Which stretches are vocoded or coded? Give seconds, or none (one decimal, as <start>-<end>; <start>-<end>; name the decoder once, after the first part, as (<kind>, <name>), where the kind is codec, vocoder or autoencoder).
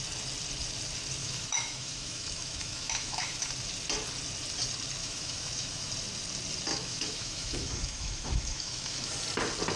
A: 1.2-3.5 (autoencoder, DAC-VAE); 5.0-5.9; 6.7-9.1